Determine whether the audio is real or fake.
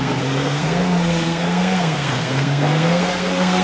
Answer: fake